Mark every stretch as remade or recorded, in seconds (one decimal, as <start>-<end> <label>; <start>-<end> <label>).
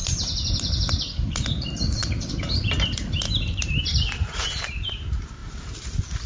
0.0-1.3 recorded; 1.3-6.3 remade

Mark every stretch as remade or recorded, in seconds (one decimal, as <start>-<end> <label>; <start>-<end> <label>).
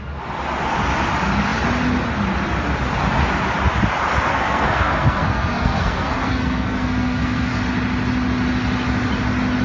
0.0-4.3 recorded; 4.3-7.6 remade; 7.6-9.6 recorded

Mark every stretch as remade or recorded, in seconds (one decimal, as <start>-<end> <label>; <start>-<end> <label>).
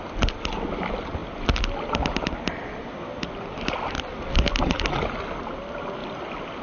0.0-6.6 recorded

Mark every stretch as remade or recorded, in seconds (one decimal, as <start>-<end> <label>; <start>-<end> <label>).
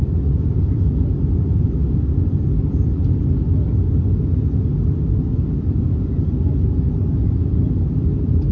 0.0-8.5 recorded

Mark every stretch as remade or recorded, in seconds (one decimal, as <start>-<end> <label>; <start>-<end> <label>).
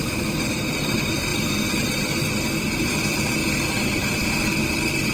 0.0-1.3 recorded; 1.3-2.6 remade; 2.6-5.1 recorded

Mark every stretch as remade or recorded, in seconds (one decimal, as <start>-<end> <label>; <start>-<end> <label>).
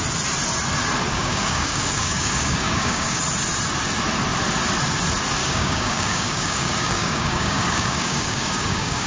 0.0-1.1 recorded; 1.1-3.2 remade; 3.2-5.4 recorded; 5.4-9.1 remade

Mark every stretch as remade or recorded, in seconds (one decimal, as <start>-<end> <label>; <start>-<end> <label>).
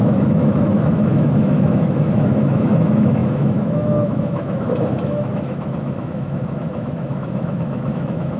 0.0-8.4 remade